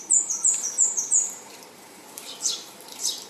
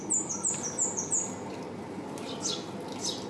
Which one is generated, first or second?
first